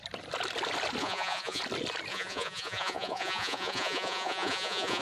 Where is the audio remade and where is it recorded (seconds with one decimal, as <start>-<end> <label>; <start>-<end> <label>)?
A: 0.0-1.0 recorded; 1.0-1.6 remade; 1.6-2.1 recorded; 2.1-5.0 remade